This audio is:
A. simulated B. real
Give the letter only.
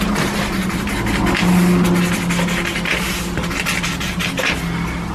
B